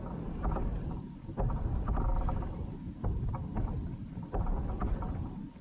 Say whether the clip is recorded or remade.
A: recorded